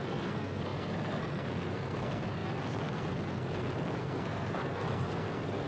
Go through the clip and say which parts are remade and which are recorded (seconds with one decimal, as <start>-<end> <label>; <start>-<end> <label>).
0.0-5.7 remade